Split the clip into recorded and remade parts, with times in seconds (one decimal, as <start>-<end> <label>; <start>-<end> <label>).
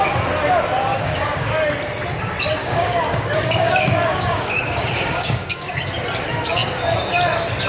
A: 0.0-0.9 recorded; 0.9-1.6 remade; 1.6-2.6 recorded; 2.6-5.7 remade; 5.7-7.7 recorded